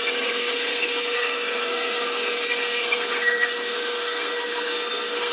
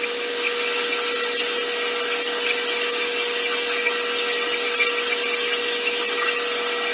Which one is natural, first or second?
second